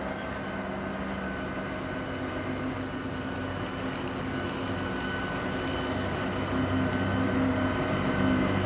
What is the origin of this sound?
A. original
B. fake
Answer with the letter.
A